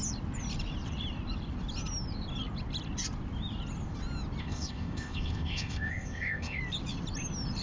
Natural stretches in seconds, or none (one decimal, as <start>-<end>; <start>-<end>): 0.0-4.4; 6.6-7.6